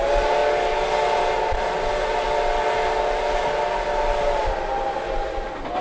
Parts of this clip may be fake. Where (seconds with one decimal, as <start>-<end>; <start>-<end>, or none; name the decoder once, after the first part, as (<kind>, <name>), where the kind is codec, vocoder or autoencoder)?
none